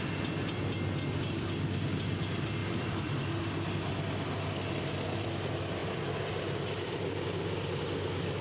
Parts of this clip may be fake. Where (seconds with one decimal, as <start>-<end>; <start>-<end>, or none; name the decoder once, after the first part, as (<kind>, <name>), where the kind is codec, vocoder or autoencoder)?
2.6-3.2 (vocoder, BigVGAN v2)